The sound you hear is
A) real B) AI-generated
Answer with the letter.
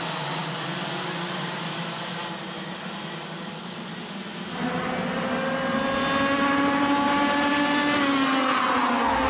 A